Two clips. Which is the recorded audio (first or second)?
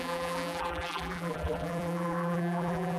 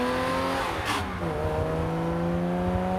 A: second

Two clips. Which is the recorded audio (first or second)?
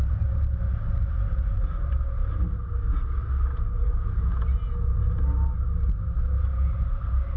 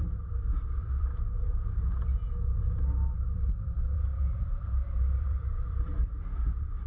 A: first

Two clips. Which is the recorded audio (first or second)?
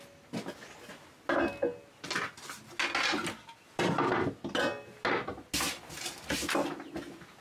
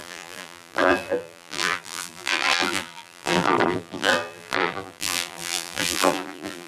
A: first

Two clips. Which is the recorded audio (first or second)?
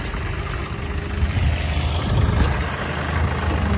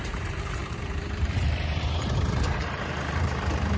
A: first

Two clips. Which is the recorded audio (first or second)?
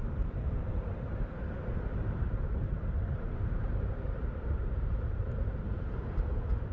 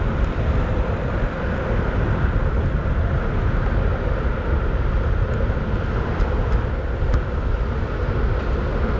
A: second